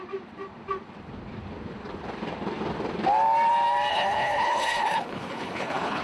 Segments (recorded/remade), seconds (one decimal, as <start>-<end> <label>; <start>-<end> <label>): 0.0-3.9 recorded; 3.9-6.0 remade